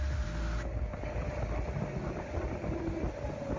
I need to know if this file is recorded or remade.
recorded